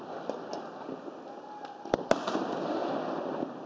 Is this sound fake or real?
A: real